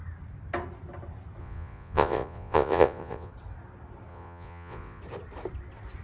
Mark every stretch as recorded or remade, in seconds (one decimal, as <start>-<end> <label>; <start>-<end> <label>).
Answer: 0.0-1.4 recorded; 1.4-3.3 remade; 3.3-4.1 recorded; 4.1-5.0 remade; 5.0-6.0 recorded